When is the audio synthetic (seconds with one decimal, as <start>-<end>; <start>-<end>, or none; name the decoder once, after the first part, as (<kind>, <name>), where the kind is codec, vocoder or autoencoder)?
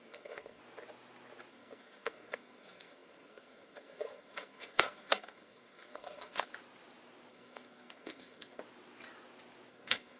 0.0-0.6 (codec, SNAC); 1.5-6.5; 7.3-8.6; 9.7-10.2